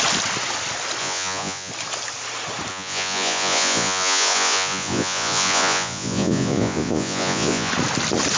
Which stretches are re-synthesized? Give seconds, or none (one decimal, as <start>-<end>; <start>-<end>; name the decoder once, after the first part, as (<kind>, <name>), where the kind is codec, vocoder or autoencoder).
1.0-1.7 (vocoder, Vocos); 2.7-7.7

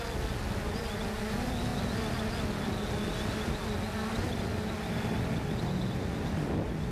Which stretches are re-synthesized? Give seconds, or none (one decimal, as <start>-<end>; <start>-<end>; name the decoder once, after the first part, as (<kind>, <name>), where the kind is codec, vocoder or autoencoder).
none

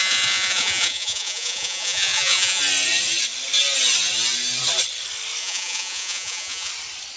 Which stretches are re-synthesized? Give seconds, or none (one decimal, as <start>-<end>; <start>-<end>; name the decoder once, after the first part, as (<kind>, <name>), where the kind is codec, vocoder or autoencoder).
0.0-2.6 (vocoder, Vocos); 5.4-6.7

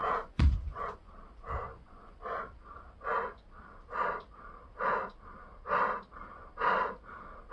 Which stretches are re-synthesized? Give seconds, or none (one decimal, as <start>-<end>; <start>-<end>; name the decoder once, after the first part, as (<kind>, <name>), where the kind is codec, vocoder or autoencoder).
0.0-1.1 (vocoder, Vocos); 1.7-2.4